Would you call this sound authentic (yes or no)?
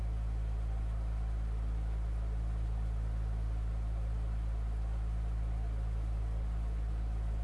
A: yes